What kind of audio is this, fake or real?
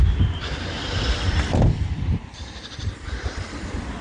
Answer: real